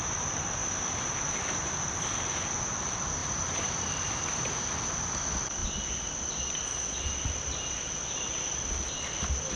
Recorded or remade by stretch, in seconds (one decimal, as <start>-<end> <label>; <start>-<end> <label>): 0.0-3.2 recorded; 3.2-4.3 remade; 4.3-9.6 recorded